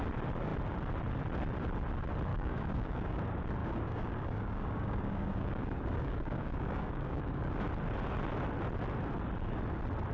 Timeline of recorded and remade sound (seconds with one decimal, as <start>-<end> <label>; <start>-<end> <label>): 0.0-2.3 recorded; 2.3-3.2 remade; 3.2-3.6 recorded; 3.6-7.5 remade; 7.5-10.1 recorded